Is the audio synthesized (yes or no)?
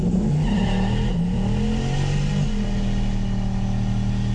no